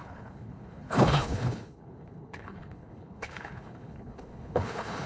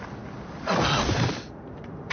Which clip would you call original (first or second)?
second